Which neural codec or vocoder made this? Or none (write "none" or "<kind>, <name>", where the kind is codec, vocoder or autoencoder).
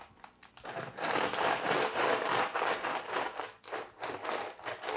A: none